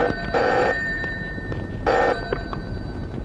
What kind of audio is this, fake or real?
fake